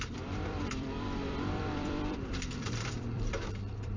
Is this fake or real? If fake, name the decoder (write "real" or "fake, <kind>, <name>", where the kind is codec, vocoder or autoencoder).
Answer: fake, vocoder, BigVGAN v2